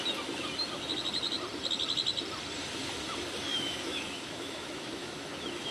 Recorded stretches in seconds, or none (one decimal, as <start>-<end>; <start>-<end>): 0.0-3.5